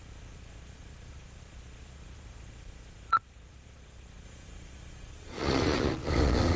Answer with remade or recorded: remade